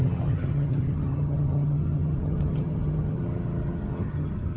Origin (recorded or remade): remade